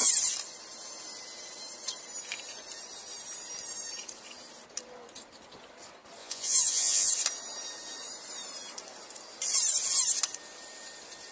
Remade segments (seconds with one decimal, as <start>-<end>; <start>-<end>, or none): 6.2-7.1